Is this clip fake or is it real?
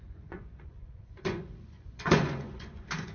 fake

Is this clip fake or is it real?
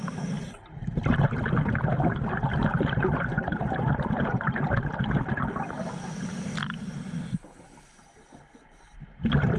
real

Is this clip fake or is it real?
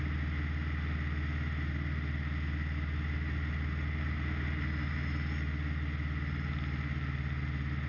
real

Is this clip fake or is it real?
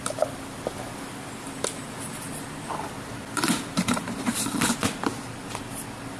real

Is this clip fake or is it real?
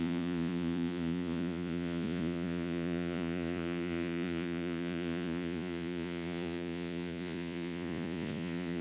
fake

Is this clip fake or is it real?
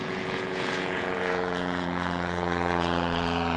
fake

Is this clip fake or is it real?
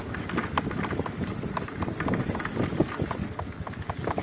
real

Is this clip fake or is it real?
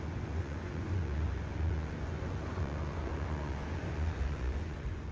fake